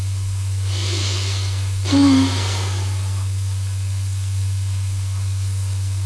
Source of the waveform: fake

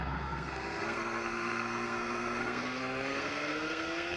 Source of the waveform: fake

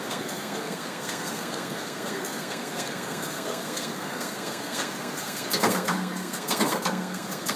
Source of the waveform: fake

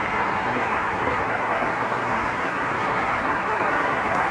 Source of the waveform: fake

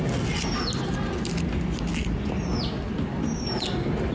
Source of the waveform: real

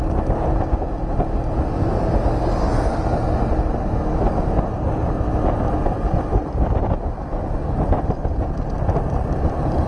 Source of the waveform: real